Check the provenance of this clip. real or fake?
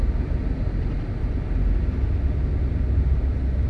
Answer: real